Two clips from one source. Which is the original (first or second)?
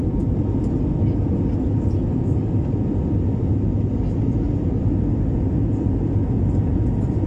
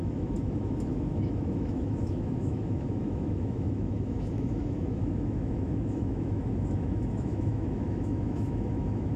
first